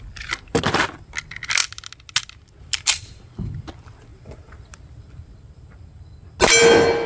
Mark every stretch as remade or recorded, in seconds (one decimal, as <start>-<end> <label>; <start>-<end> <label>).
0.0-7.1 recorded